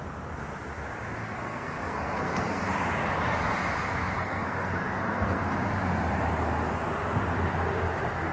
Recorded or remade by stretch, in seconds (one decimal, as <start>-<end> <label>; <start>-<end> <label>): 0.0-1.2 recorded; 1.2-2.6 remade; 2.6-3.9 recorded; 3.9-5.4 remade; 5.4-8.3 recorded